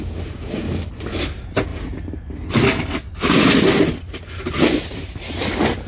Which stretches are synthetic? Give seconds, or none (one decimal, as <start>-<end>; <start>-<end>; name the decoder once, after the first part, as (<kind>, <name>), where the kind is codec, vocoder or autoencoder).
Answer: none